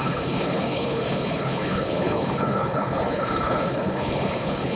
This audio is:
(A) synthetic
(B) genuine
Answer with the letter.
A